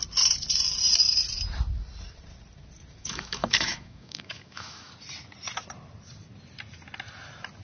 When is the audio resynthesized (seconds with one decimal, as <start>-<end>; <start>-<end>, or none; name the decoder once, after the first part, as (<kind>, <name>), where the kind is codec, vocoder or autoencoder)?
3.0-4.9 (autoencoder, DAC-VAE)